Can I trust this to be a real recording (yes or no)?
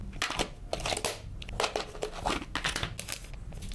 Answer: yes